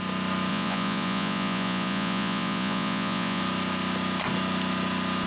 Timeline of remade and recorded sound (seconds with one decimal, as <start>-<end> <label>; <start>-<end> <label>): 0.0-0.5 recorded; 0.5-3.4 remade; 3.4-5.3 recorded